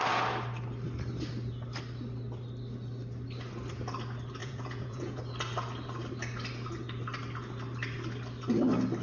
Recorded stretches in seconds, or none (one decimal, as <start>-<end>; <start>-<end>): 0.0-4.4; 5.2-9.0